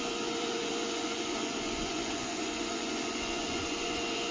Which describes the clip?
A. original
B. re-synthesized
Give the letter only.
B